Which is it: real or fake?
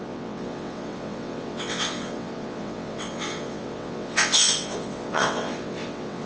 fake